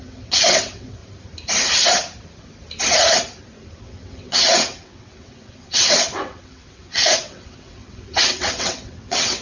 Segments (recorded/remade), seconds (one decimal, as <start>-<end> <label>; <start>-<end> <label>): 0.0-1.0 remade; 1.0-3.8 recorded; 3.8-9.4 remade